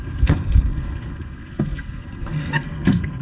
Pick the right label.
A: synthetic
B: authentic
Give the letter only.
A